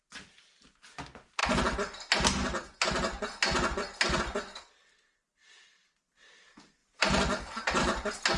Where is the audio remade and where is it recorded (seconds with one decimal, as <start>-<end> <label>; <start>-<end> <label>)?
0.0-8.4 recorded